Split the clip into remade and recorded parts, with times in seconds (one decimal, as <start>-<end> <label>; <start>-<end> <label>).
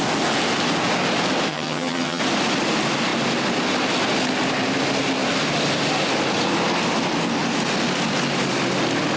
0.0-1.5 recorded; 1.5-2.2 remade; 2.2-9.2 recorded